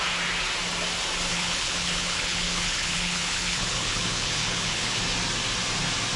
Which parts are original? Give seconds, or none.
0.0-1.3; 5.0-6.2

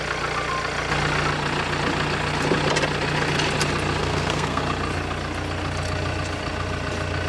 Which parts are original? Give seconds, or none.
0.0-4.0; 4.6-7.3

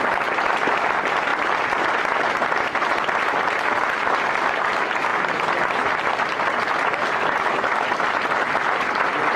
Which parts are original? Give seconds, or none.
0.0-9.4

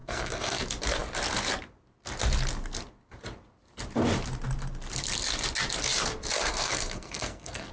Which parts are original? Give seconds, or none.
0.6-6.4

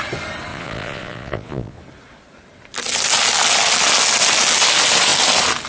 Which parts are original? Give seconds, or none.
0.0-0.5; 1.8-5.7